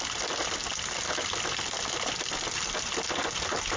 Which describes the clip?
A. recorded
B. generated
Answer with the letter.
A